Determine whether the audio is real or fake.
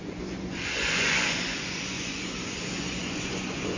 fake